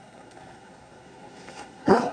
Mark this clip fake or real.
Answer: fake